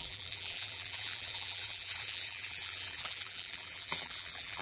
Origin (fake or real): fake